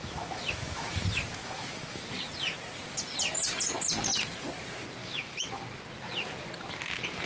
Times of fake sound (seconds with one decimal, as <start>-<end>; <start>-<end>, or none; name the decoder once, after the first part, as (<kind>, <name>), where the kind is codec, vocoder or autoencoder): 0.0-0.9 (autoencoder, DAC-VAE); 1.4-2.1; 5.0-5.6